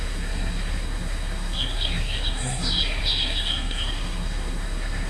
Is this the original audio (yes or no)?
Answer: no